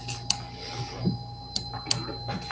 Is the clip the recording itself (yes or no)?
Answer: yes